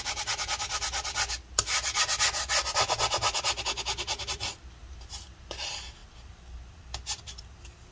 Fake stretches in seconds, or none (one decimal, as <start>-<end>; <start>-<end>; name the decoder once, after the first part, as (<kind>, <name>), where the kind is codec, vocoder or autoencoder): 4.8-5.4 (vocoder, BigVGAN v2)